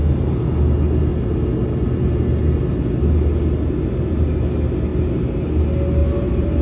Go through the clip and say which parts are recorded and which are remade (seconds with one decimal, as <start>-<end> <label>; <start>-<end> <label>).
0.0-6.0 recorded; 6.0-6.6 remade